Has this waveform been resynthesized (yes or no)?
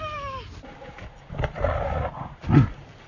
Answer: no